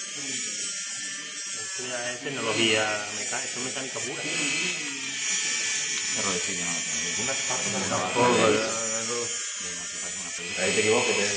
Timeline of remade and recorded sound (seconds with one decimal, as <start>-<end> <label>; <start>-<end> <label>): 0.0-11.4 recorded